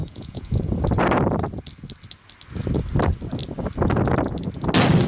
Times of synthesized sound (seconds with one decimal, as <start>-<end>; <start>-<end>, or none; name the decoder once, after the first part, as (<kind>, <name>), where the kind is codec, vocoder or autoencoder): 0.0-0.7 (vocoder, Vocos)